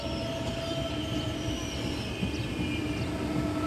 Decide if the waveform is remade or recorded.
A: recorded